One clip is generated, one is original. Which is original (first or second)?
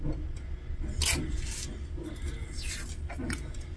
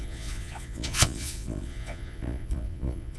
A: first